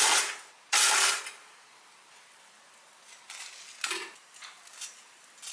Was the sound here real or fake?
real